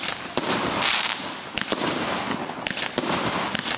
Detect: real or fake real